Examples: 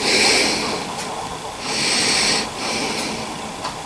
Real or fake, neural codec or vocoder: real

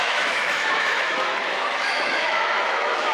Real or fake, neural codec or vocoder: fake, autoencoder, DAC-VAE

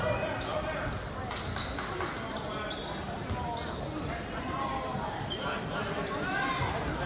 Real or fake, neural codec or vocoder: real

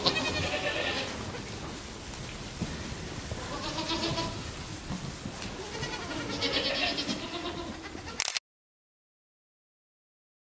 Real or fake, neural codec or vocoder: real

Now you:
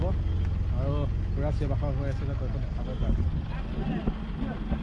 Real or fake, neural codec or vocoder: real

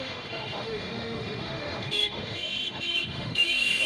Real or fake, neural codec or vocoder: fake, autoencoder, DAC-VAE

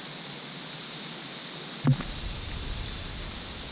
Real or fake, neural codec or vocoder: real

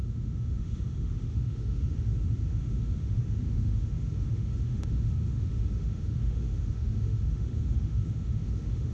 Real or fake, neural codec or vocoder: fake, autoencoder, DAC-VAE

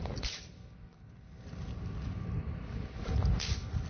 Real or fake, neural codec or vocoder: real